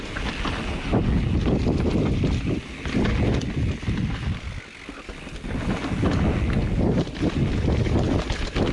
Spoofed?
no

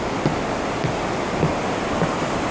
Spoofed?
no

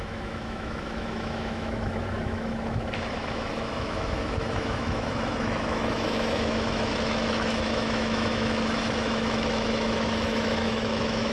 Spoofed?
yes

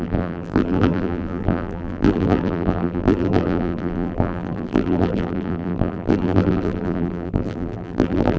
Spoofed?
yes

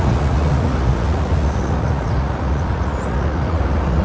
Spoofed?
yes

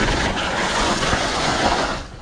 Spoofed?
yes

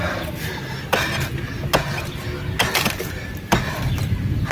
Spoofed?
no